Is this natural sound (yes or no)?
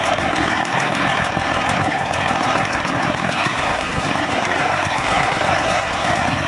no